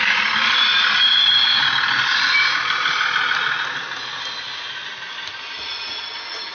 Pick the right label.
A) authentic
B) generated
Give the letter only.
A